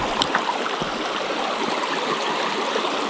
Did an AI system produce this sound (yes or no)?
no